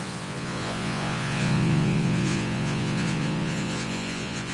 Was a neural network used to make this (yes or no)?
yes